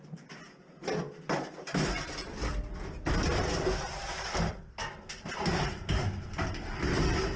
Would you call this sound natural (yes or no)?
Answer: yes